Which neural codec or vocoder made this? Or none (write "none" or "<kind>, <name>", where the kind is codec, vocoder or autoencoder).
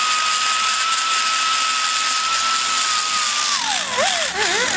none